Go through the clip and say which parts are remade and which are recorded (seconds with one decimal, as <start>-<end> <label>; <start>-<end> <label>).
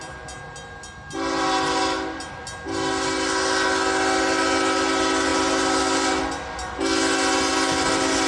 0.0-8.3 recorded